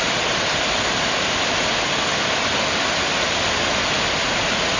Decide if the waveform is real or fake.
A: real